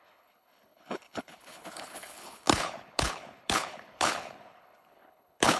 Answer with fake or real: fake